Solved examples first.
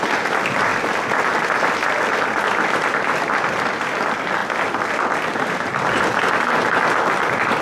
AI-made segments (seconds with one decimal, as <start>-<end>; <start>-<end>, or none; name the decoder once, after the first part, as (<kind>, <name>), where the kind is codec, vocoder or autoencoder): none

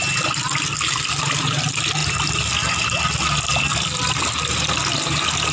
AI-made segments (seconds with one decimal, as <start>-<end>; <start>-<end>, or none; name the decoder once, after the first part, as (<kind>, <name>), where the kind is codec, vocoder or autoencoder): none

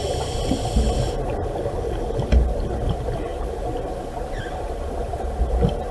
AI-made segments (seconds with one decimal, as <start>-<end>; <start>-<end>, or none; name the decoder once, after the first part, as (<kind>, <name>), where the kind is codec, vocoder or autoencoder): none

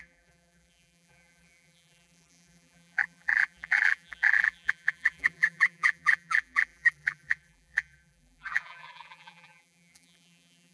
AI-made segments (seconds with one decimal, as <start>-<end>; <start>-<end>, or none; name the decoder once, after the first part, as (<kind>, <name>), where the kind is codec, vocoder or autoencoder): 0.0-10.7 (vocoder, BigVGAN v2)

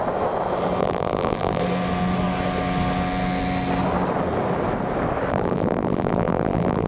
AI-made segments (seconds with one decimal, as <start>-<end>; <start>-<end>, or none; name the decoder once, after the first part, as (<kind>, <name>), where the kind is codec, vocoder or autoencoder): 0.8-1.6 (vocoder, BigVGAN v2); 5.3-6.9

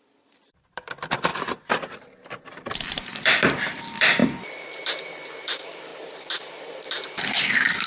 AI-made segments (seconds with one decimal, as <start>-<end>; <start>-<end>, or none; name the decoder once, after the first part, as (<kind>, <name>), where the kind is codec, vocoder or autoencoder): 0.0-5.9 (vocoder, BigVGAN v2); 6.5-7.9

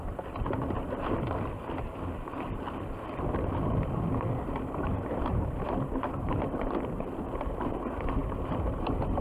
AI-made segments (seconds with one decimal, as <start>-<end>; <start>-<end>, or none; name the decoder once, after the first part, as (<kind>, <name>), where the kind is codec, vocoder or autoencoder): 8.2-9.2 (vocoder, BigVGAN v2)